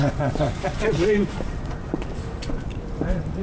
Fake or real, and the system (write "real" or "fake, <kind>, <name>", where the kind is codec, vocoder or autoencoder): fake, vocoder, BigVGAN v2